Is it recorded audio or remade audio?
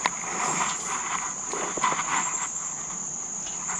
recorded